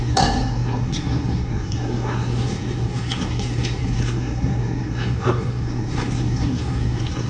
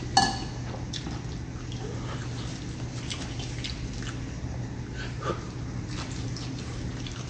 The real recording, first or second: second